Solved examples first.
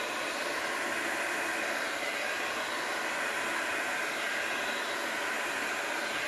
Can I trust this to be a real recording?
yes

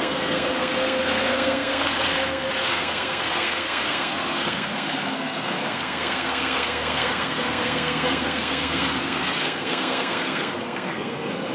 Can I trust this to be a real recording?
no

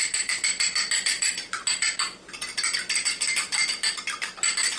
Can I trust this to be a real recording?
yes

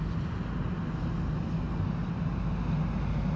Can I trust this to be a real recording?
yes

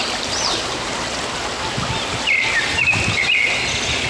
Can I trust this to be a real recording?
yes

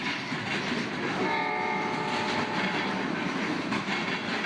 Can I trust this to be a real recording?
no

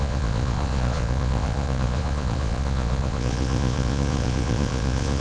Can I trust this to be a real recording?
no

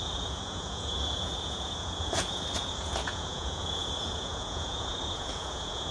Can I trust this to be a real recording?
no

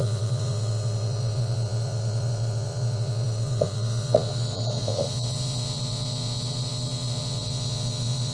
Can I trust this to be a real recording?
no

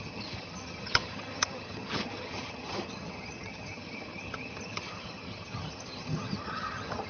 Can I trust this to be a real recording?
no